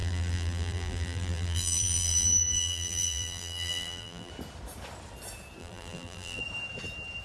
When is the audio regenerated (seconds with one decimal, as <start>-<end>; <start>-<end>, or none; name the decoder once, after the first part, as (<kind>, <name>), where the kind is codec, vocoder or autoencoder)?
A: 0.0-4.3 (vocoder, BigVGAN v2); 5.6-6.4